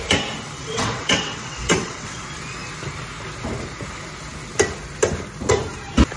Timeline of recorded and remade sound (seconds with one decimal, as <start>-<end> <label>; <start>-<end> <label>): 0.0-0.6 recorded; 0.6-2.2 remade; 2.2-6.2 recorded